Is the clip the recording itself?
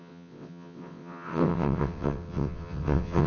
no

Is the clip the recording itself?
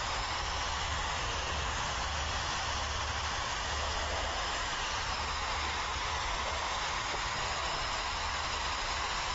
yes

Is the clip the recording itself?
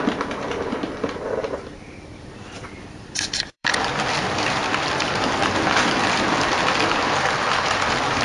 no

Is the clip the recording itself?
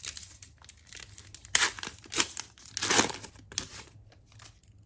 yes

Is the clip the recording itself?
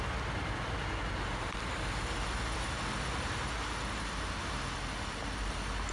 yes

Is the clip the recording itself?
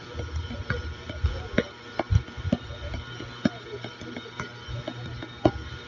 yes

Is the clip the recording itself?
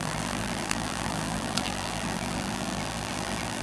no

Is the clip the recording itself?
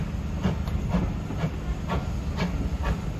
yes